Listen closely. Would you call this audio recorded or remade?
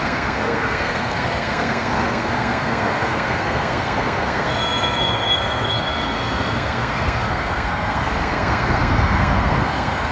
remade